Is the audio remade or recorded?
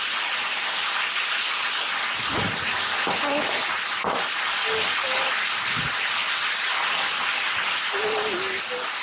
recorded